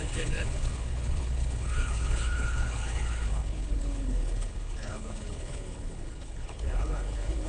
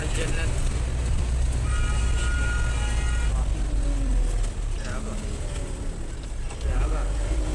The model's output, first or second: first